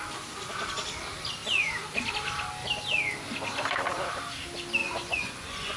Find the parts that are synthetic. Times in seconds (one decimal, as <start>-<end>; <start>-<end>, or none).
4.8-5.8